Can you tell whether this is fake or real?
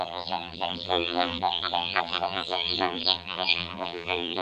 fake